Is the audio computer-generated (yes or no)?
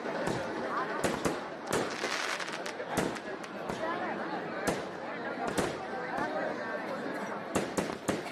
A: no